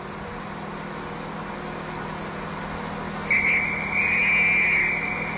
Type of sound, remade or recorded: recorded